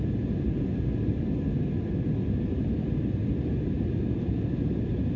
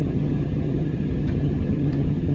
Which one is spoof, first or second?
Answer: second